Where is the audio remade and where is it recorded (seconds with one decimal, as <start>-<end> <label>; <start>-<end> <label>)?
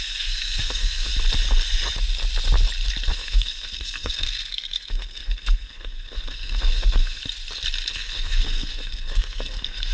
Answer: 0.0-1.1 remade; 1.1-3.1 recorded; 3.1-7.2 remade; 7.2-7.9 recorded; 7.9-9.9 remade